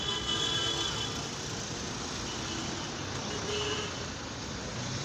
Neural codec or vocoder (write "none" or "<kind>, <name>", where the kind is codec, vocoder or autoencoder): none